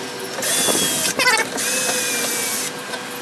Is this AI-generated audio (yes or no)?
no